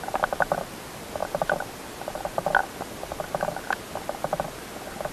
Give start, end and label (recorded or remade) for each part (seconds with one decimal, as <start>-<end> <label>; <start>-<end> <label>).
0.0-5.1 recorded